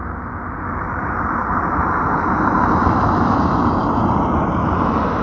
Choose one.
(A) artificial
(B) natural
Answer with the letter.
B